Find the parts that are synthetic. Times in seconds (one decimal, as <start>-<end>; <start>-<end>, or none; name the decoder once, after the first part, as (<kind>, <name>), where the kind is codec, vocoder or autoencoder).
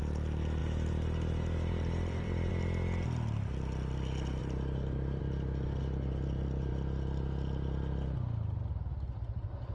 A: 0.6-2.5 (vocoder, BigVGAN v2); 4.4-5.2